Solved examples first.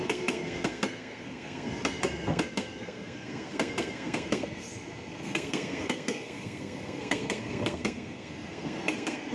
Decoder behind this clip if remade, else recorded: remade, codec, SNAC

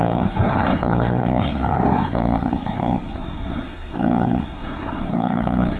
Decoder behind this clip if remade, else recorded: remade, codec, SNAC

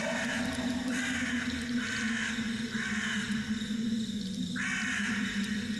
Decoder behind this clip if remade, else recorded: recorded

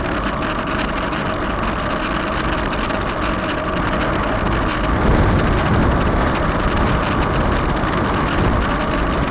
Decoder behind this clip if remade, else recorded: recorded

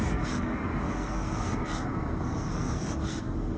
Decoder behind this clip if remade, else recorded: remade, codec, SNAC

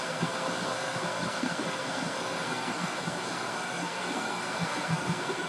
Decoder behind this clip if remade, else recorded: remade, codec, SNAC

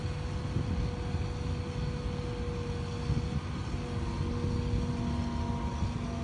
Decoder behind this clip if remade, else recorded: recorded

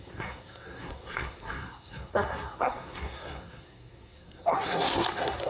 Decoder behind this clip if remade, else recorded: remade, codec, SNAC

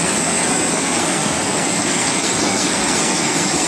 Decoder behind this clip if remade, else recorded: remade, codec, SNAC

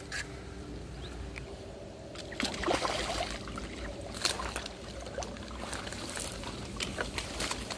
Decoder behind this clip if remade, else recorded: recorded